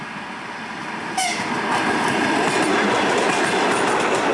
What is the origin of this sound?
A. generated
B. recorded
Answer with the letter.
B